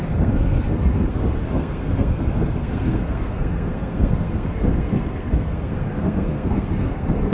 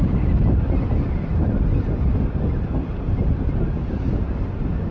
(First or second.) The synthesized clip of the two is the first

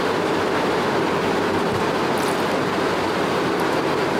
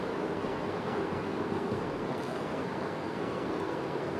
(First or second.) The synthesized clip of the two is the second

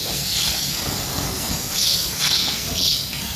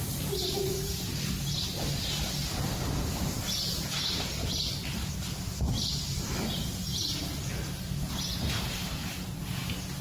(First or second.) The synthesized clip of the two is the first